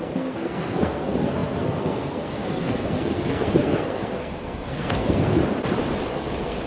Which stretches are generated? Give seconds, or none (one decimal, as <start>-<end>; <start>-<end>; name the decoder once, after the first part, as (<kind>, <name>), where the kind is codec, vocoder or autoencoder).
0.0-5.4 (codec, SNAC); 6.1-6.7